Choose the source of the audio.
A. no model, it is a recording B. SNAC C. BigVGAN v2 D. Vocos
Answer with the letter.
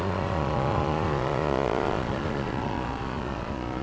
D